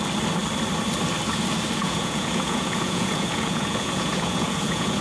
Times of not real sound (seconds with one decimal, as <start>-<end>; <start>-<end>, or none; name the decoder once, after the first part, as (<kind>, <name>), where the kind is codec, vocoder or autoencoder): 1.8-5.0 (vocoder, Vocos)